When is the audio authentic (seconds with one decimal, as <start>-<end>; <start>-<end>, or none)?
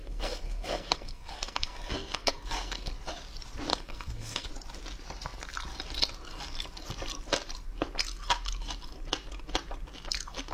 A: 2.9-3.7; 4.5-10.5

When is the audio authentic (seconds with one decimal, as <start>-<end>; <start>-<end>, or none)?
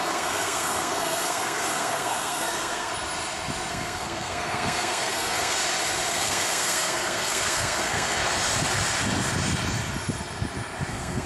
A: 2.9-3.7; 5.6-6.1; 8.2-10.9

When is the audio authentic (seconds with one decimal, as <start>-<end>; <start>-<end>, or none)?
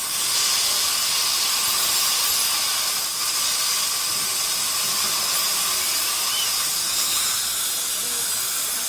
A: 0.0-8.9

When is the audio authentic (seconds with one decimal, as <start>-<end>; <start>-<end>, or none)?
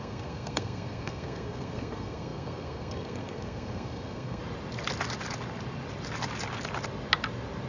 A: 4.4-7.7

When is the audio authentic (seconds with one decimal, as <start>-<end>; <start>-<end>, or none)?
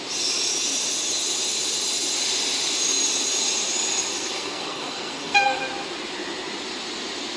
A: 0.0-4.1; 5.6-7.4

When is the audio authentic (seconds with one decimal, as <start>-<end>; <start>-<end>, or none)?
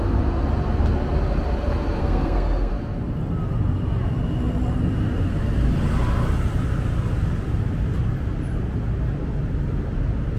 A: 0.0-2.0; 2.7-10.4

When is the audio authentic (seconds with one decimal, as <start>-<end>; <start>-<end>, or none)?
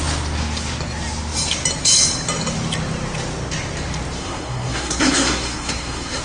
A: 0.0-4.2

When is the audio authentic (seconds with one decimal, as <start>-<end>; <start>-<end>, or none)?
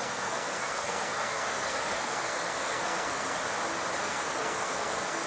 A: 3.4-4.0